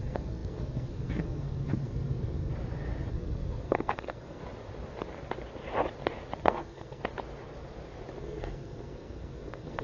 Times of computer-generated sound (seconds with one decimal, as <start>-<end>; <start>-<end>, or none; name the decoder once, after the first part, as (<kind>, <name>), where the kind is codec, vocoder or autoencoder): 0.0-2.5 (codec, SNAC); 3.1-4.4; 6.4-7.0; 8.2-9.8